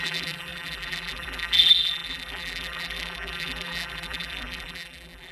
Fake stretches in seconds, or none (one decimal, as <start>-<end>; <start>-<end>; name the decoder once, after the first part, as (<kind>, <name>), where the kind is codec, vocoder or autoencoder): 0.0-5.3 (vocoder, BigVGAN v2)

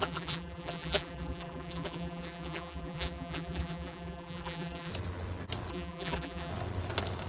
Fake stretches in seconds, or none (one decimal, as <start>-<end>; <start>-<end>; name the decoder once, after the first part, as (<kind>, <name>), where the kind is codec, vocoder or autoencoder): 0.0-4.9 (vocoder, BigVGAN v2); 5.7-6.5

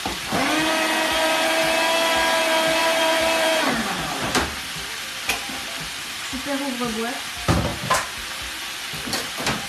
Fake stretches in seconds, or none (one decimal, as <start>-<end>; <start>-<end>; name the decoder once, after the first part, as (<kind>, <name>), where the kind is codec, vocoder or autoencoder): 2.8-4.6 (vocoder, BigVGAN v2); 7.7-8.3